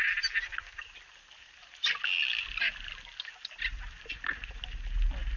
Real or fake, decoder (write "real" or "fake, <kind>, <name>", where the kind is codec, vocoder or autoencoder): real